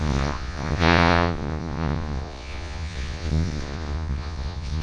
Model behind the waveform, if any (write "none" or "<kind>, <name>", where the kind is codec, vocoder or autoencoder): vocoder, Vocos